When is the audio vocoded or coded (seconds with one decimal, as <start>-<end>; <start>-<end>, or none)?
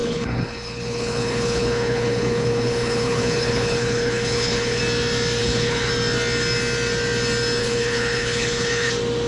0.0-4.8; 5.4-5.9; 7.6-8.9